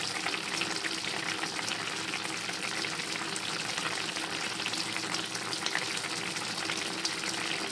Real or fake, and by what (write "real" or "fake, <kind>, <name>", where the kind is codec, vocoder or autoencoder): real